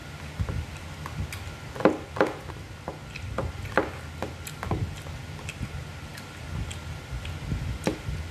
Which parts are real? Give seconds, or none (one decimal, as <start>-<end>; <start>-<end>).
0.0-8.3